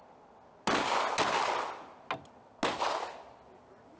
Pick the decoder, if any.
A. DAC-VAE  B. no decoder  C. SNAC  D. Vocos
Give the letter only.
B